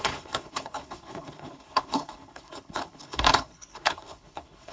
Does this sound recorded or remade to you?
remade